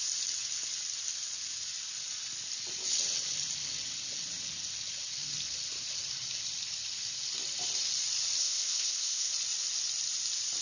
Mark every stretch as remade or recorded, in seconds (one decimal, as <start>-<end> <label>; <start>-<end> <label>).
0.0-8.4 recorded; 8.4-9.3 remade; 9.3-10.6 recorded